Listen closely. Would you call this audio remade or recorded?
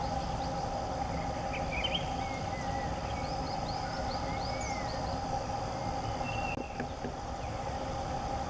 recorded